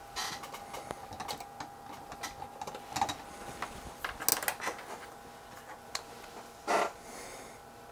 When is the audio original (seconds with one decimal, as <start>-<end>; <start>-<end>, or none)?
0.0-7.9